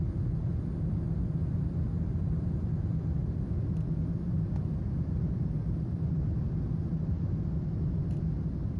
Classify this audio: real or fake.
real